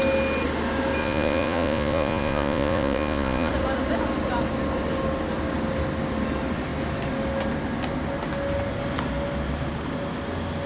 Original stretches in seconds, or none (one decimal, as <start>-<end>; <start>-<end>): 0.0-1.0; 3.5-10.7